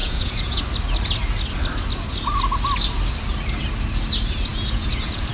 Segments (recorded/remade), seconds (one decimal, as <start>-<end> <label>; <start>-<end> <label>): 0.0-0.6 remade; 0.6-4.5 recorded; 4.5-5.3 remade